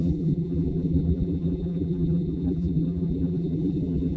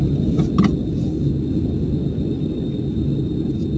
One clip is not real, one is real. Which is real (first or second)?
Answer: second